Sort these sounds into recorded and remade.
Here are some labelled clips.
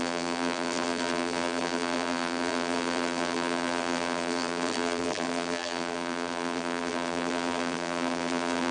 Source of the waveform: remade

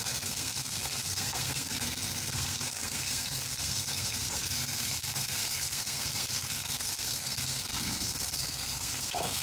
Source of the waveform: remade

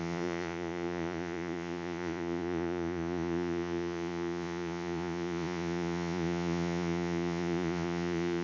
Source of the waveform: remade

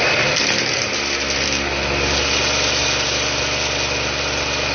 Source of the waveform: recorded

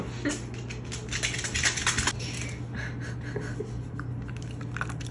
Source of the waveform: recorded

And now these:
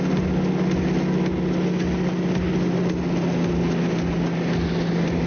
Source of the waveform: recorded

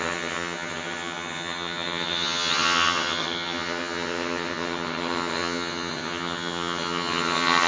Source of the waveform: remade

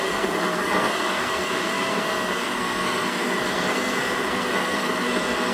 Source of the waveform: remade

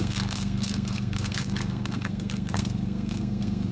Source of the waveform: remade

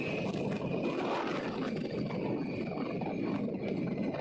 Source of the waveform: recorded